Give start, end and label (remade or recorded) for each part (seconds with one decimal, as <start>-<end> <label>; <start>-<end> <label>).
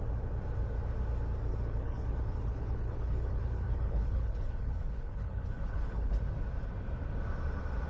0.0-1.5 recorded; 1.5-6.2 remade; 6.2-7.9 recorded